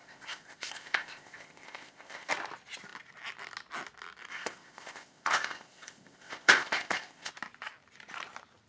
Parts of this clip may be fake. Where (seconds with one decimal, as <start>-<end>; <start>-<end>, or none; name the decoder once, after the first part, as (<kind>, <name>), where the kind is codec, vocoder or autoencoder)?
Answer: 0.0-2.3 (codec, ZipCodec); 4.3-7.3